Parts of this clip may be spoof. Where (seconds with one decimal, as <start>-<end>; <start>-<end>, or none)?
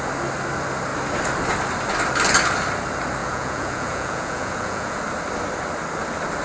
3.2-5.0